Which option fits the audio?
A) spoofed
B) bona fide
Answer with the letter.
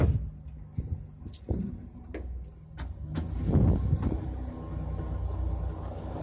B